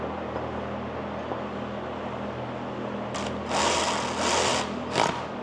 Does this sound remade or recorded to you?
recorded